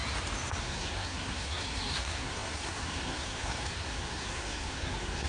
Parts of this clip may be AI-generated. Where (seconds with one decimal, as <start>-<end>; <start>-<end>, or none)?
0.6-5.3